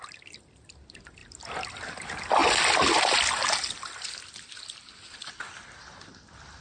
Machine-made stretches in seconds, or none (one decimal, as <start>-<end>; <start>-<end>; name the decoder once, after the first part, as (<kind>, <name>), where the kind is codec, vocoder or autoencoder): none

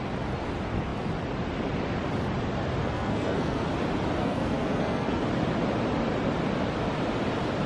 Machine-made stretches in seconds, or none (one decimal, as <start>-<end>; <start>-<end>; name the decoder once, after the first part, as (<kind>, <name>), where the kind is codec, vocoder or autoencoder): 2.8-3.7 (codec, SNAC); 4.2-5.2

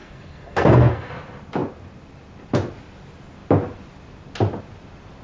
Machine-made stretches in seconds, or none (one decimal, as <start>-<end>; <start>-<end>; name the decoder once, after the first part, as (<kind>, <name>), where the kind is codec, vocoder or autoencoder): 0.0-1.1 (codec, SNAC)

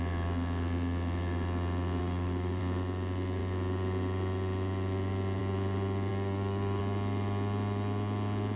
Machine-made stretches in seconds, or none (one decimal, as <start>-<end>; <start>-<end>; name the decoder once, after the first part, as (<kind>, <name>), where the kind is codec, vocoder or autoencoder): 2.0-2.6 (codec, DAC); 6.1-6.8

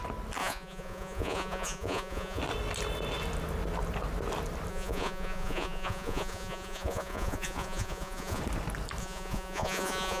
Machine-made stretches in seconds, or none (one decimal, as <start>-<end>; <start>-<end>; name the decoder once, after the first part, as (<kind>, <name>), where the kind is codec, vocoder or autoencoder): 0.4-2.4 (vocoder, Vocos); 4.7-8.4; 9.0-10.2

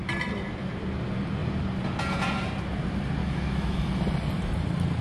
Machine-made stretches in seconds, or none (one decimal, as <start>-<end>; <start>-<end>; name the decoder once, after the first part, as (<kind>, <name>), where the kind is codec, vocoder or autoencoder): 3.2-3.9 (autoencoder, DAC-VAE)

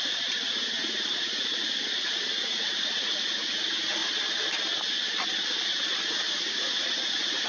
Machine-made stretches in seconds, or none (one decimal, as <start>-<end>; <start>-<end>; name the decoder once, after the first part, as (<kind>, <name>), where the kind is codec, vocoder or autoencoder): 0.0-4.0 (vocoder, Vocos); 6.5-7.5